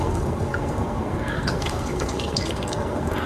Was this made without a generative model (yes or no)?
no